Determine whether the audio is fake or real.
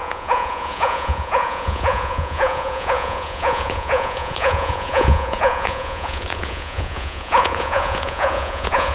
fake